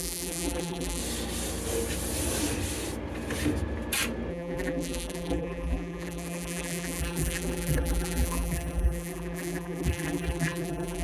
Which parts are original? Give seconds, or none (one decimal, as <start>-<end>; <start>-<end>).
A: 1.0-4.3